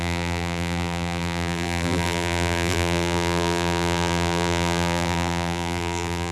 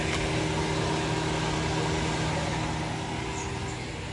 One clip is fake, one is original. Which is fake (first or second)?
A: first